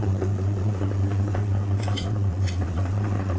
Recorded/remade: remade